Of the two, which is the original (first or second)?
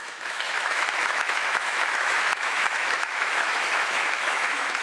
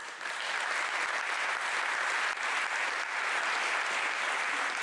second